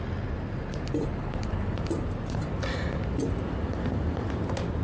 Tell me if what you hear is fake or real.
real